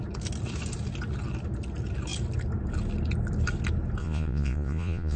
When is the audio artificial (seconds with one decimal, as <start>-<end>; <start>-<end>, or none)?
4.0-5.2